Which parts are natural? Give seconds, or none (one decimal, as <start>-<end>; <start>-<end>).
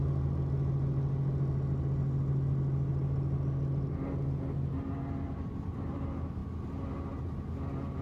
0.0-8.0